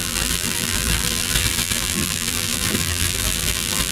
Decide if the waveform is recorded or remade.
remade